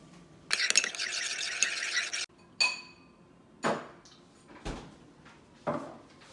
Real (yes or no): yes